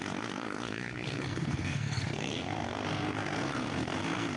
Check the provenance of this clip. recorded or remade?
remade